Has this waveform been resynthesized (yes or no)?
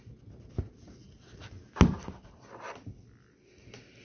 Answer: no